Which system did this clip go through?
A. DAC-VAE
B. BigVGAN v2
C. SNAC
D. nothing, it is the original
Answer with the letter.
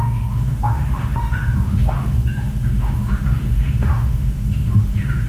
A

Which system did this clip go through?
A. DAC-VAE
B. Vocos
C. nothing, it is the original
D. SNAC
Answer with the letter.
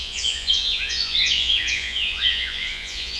B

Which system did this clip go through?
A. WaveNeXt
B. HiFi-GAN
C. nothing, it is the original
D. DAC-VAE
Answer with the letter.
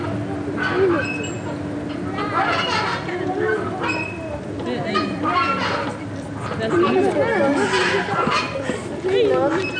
C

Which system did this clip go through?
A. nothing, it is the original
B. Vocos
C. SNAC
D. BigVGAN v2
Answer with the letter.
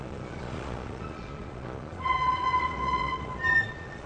B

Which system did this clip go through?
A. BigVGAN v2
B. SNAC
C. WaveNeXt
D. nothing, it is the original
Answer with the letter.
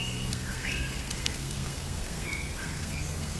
B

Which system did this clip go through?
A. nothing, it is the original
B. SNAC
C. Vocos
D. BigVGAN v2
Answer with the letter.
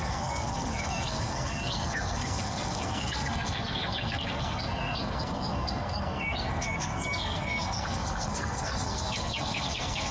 B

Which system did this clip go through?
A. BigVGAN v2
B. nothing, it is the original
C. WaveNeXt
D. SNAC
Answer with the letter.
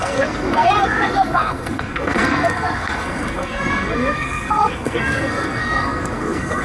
D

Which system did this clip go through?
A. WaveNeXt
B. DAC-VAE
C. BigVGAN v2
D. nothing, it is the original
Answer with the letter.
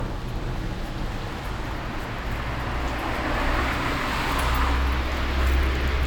D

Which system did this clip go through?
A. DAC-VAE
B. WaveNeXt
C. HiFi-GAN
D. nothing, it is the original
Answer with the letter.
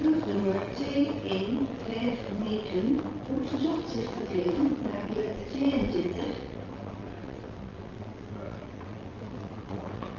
B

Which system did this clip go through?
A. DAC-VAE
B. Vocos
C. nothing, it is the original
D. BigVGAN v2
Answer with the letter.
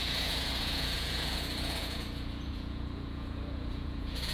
B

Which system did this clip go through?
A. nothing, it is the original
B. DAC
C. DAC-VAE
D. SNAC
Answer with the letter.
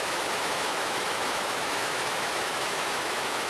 C